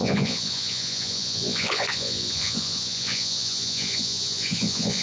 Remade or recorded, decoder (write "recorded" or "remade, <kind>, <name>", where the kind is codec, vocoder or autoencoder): remade, vocoder, Vocos